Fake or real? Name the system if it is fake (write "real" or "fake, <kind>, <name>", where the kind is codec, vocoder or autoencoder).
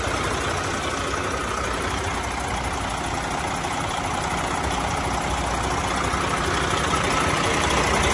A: real